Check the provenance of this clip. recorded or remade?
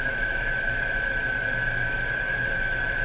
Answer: remade